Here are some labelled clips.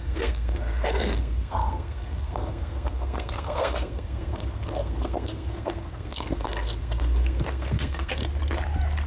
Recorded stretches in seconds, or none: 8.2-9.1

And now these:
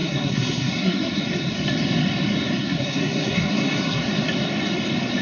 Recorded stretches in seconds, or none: 1.2-2.6; 4.0-5.2

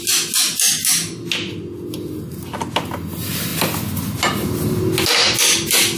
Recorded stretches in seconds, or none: 0.0-6.0